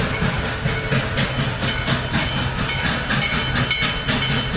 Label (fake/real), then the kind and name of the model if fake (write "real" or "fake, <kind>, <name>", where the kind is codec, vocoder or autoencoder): real